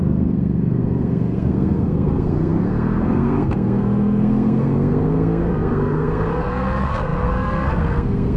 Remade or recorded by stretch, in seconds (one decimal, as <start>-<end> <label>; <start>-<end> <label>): 0.0-8.4 remade